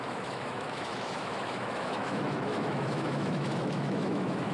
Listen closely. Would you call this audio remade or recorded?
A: remade